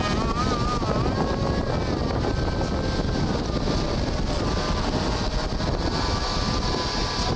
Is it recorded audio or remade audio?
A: recorded